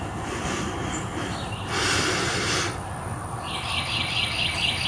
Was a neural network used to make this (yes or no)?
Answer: no